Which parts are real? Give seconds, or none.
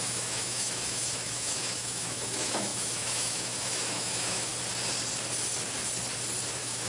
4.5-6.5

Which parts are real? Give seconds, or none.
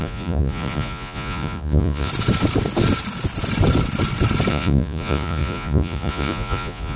2.1-4.5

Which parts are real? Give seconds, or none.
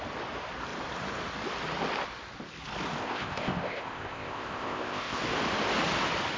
0.0-3.0; 5.2-6.4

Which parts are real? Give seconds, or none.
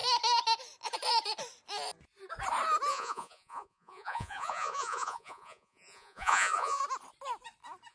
0.0-2.9; 6.8-7.9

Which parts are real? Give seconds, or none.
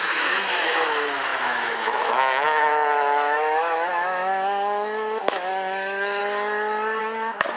6.2-7.0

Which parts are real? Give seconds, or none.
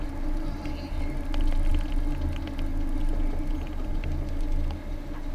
0.0-5.3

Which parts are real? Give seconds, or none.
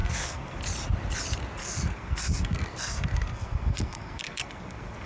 0.6-1.6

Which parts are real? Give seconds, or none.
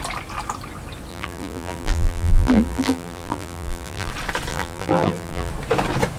0.0-1.1; 4.1-4.5; 5.5-6.2